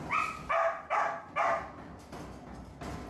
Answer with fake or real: real